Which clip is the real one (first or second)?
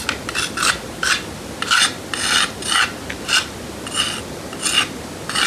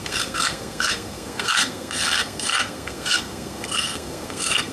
first